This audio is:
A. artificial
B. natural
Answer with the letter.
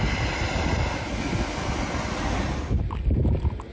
B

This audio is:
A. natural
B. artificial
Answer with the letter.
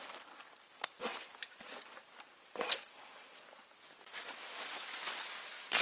A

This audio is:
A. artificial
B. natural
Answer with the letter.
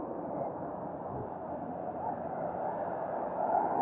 A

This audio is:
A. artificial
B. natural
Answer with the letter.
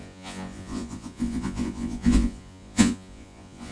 A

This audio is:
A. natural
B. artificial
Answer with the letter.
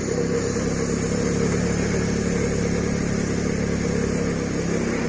A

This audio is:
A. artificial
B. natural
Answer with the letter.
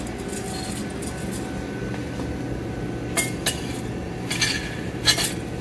B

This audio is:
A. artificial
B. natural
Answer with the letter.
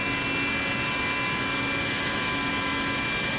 B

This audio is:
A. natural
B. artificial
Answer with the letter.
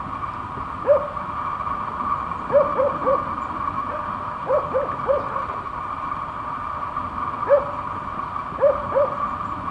A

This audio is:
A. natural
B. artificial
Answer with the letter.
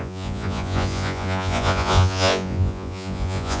B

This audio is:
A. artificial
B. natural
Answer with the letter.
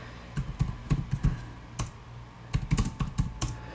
B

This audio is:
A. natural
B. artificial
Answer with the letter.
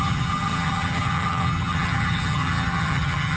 B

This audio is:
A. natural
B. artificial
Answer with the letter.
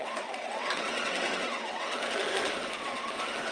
B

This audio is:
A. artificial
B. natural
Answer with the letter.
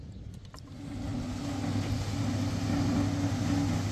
B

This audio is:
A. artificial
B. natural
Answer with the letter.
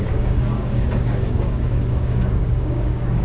A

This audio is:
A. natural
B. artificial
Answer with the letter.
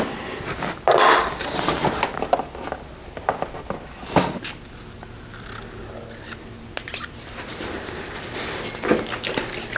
A